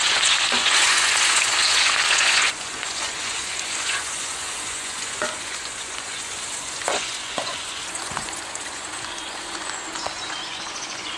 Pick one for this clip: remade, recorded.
remade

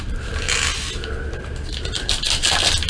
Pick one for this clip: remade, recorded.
recorded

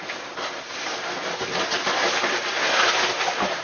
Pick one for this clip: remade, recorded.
recorded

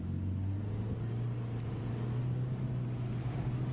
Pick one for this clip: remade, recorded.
recorded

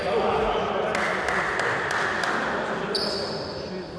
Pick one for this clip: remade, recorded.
recorded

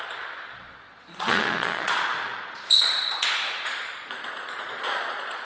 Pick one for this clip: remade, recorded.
remade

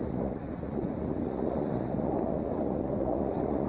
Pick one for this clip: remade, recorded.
remade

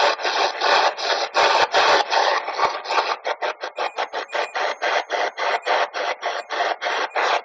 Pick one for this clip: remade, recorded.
recorded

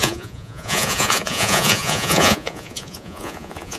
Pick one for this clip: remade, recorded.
remade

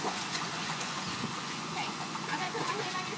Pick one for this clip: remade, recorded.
remade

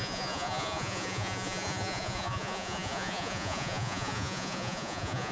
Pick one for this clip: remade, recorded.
remade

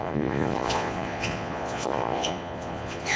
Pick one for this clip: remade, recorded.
remade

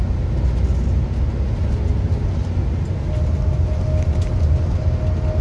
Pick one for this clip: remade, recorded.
recorded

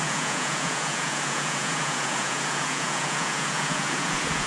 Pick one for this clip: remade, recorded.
remade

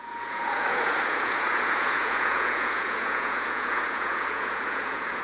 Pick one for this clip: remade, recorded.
remade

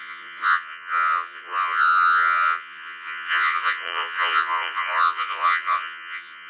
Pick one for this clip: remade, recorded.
remade